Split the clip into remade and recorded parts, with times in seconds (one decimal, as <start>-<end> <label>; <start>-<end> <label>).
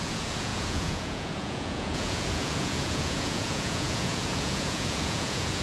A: 0.0-5.6 remade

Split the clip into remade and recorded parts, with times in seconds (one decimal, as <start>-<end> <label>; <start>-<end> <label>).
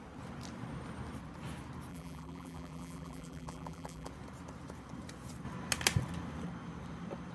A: 0.0-1.9 recorded; 1.9-4.1 remade; 4.1-7.3 recorded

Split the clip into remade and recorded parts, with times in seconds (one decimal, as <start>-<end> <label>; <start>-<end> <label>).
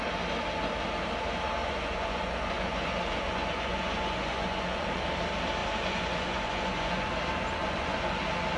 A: 0.0-1.6 recorded; 1.6-5.0 remade; 5.0-5.6 recorded; 5.6-7.1 remade; 7.1-7.6 recorded; 7.6-8.2 remade; 8.2-8.6 recorded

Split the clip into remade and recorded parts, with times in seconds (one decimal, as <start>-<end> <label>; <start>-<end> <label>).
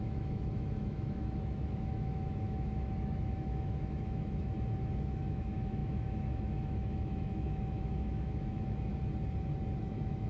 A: 0.0-8.9 remade; 8.9-9.8 recorded; 9.8-10.3 remade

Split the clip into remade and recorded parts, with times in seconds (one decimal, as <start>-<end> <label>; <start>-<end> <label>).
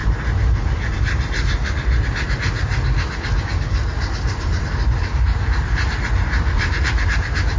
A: 0.0-7.6 remade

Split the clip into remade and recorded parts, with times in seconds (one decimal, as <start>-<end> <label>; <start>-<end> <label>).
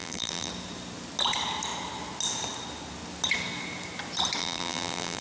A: 0.0-0.5 remade; 0.5-4.4 recorded; 4.4-5.2 remade